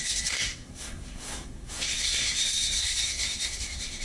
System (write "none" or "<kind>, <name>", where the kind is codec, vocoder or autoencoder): codec, SNAC